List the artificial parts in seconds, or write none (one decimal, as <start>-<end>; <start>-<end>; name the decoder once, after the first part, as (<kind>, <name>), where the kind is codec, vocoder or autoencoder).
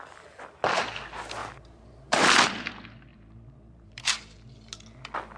1.4-2.7 (vocoder, BigVGAN v2); 3.1-4.4